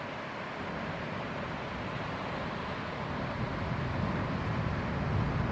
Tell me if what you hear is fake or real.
real